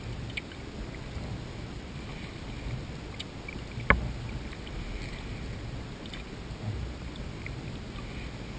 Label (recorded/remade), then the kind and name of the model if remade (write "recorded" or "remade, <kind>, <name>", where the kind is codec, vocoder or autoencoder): recorded